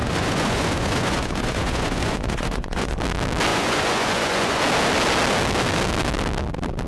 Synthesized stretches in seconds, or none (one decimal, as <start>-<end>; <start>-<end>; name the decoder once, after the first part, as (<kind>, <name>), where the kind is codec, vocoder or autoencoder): 0.0-3.0 (vocoder, Vocos); 3.5-4.6